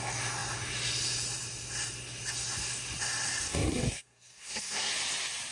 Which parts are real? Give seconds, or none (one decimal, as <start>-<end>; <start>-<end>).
0.0-3.5; 4.9-5.5